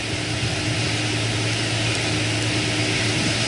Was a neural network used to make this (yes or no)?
no